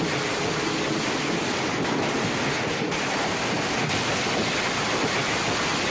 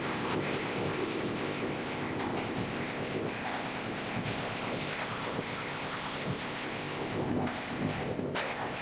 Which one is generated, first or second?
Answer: second